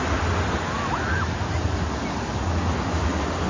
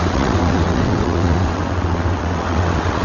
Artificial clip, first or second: second